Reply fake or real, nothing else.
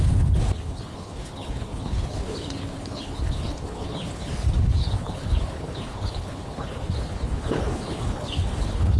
fake